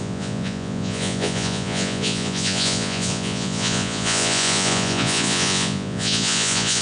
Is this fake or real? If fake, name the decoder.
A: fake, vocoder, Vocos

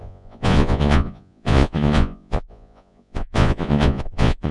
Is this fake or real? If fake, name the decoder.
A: fake, vocoder, Vocos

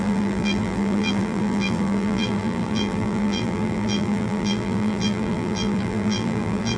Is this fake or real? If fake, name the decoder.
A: fake, vocoder, BigVGAN v2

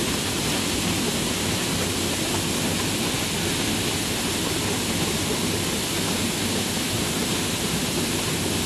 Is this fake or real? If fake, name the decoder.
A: real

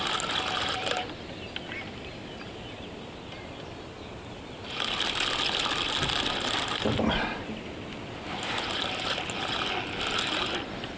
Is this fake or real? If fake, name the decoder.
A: real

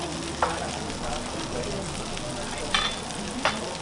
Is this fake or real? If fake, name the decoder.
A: real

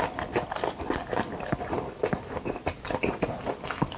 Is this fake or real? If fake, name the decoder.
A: real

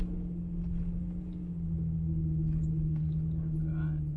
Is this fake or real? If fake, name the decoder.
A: real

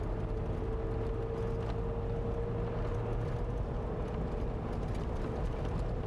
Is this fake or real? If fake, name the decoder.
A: real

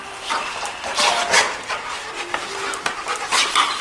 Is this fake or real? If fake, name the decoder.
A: fake, vocoder, BigVGAN v2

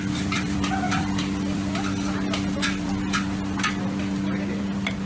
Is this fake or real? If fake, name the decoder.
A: real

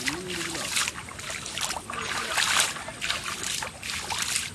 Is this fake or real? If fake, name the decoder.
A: real